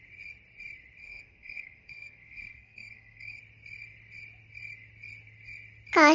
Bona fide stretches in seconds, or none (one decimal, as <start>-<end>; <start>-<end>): 0.0-1.0; 3.4-6.1